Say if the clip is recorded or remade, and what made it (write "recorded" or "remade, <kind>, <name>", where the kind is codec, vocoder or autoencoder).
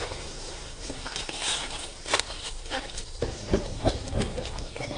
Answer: remade, codec, SNAC